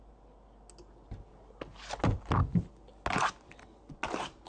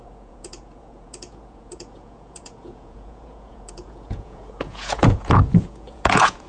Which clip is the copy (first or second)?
second